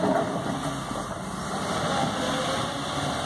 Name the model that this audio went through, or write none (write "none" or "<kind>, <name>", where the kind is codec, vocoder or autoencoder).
none